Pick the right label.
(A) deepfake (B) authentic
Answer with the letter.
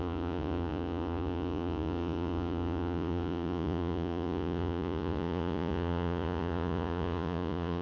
A